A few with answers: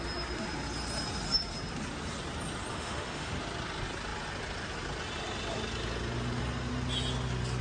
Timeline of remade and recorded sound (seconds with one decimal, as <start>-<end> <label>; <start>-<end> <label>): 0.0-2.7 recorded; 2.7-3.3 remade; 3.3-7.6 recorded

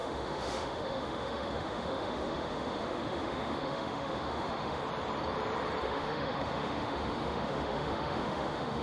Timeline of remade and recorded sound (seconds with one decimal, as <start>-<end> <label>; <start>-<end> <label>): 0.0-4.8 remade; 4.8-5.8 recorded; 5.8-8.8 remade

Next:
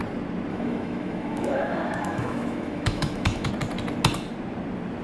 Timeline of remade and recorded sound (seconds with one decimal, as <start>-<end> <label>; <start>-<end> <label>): 0.0-0.5 recorded; 0.5-3.5 remade; 3.5-5.0 recorded

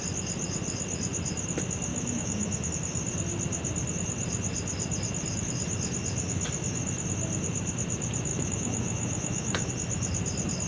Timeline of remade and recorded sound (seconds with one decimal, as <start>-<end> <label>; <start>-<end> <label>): 0.0-1.9 recorded; 1.9-2.7 remade; 2.7-8.3 recorded; 8.3-9.7 remade; 9.7-10.7 recorded

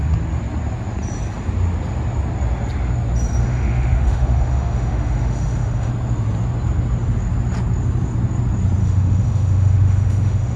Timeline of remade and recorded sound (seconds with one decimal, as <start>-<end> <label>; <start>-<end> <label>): 0.0-3.4 recorded; 3.4-5.9 remade; 5.9-8.8 recorded; 8.8-10.6 remade